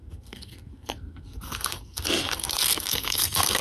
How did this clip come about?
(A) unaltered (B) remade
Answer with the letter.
B